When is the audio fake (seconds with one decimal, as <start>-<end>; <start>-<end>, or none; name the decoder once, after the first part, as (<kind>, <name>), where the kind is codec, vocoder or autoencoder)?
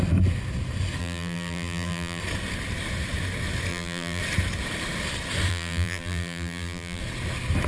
1.0-2.2 (vocoder, BigVGAN v2); 3.7-4.2; 5.5-7.0